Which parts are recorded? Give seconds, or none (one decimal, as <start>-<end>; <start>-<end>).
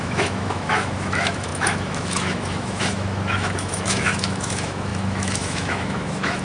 none